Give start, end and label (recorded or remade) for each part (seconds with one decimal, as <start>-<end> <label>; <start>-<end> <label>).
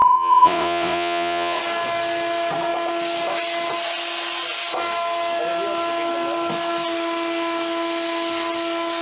0.0-1.6 remade; 1.6-9.0 recorded